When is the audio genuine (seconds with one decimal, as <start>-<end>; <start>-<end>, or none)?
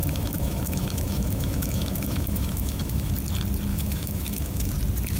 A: 3.1-3.7; 4.7-5.2